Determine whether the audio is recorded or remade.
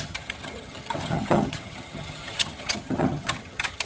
remade